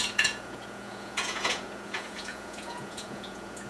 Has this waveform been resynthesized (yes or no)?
yes